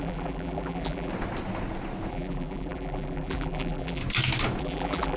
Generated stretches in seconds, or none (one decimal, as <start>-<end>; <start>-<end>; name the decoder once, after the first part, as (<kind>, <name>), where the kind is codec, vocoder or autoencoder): 0.0-1.1 (vocoder, BigVGAN v2); 2.1-4.0; 4.6-5.2